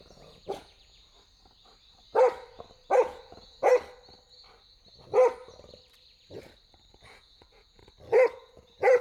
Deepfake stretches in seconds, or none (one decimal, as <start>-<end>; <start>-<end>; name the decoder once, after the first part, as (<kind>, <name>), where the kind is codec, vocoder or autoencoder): 0.0-1.1 (vocoder, Vocos); 3.0-3.7; 6.9-7.8; 8.3-9.0